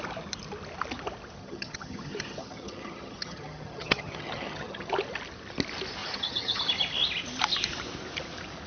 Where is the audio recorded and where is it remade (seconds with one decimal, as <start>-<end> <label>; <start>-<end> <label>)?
0.0-1.4 recorded; 1.4-4.9 remade; 4.9-6.0 recorded; 6.0-6.6 remade; 6.6-8.7 recorded

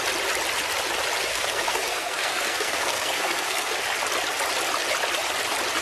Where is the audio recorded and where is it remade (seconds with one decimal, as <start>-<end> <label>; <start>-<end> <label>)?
0.0-1.3 recorded; 1.3-3.7 remade; 3.7-5.8 recorded